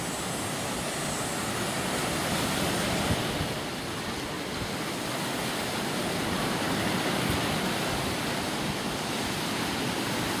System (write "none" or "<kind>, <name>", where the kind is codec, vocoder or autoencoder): none